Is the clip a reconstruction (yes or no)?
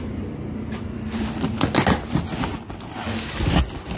no